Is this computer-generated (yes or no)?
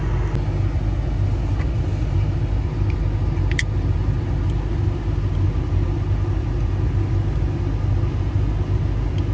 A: no